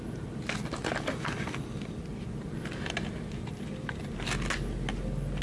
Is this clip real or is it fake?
real